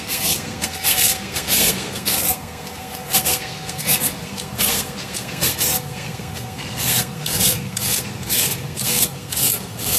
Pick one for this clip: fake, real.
fake